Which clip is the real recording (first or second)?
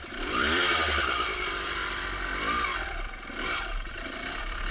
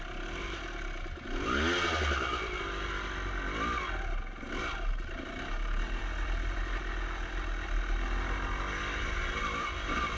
second